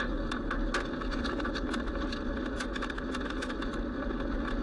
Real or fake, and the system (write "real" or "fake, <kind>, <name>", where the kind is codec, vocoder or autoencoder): real